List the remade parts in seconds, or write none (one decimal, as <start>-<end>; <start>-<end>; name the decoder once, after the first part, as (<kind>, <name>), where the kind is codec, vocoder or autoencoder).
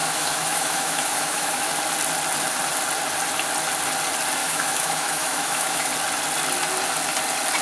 0.0-1.7 (autoencoder, DAC-VAE); 4.4-5.9